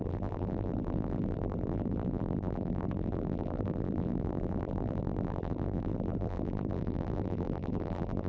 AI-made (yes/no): yes